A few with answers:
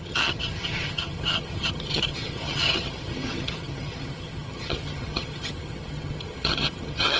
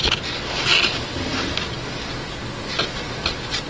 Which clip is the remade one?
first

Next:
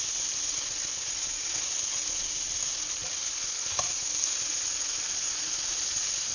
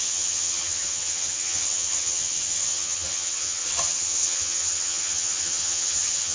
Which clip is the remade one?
second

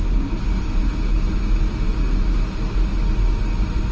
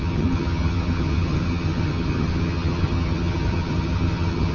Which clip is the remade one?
second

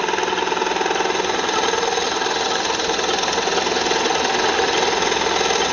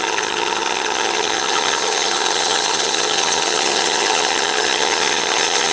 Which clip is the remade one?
second